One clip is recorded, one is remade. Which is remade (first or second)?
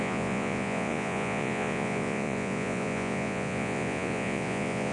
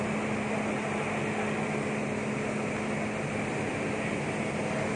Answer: first